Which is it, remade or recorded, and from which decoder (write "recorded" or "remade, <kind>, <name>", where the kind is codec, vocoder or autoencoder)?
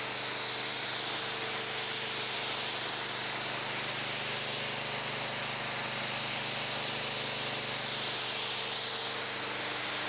recorded